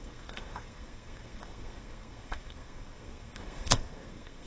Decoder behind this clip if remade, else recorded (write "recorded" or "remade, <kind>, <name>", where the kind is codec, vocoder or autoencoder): remade, codec, SNAC